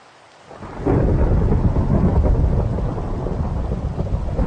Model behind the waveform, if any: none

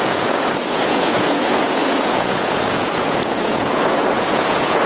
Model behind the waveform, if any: vocoder, Vocos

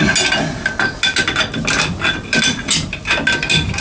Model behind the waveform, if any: none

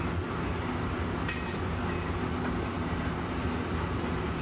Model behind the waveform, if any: none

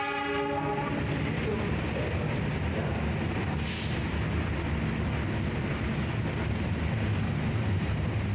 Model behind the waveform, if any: none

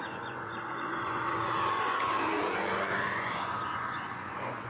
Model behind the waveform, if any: vocoder, Vocos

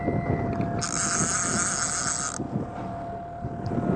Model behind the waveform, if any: none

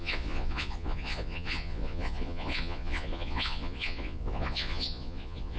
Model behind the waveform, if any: vocoder, Vocos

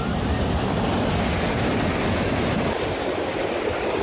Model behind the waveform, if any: none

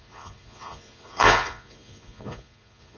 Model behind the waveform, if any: vocoder, Vocos